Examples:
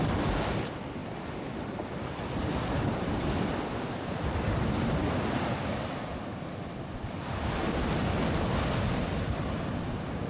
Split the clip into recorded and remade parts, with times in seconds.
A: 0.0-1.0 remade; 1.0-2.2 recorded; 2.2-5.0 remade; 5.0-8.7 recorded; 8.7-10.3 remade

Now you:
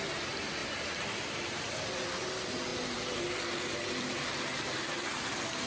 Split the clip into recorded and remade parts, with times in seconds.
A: 0.0-0.6 recorded; 0.6-1.6 remade; 1.6-2.7 recorded; 2.7-4.2 remade; 4.2-5.7 recorded